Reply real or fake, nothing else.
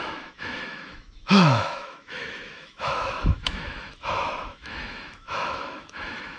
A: fake